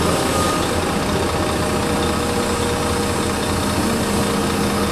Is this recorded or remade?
recorded